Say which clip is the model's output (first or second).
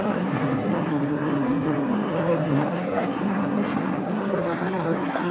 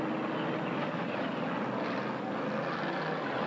first